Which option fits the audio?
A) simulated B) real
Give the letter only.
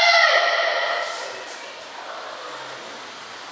B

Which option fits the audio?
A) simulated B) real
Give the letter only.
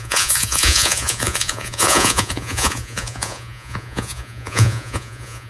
A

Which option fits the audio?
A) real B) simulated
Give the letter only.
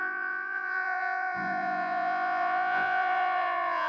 B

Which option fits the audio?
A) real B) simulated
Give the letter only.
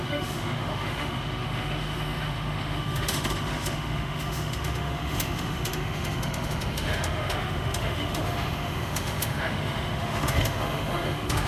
B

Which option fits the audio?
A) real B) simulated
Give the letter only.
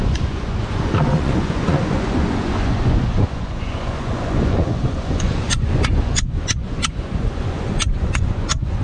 B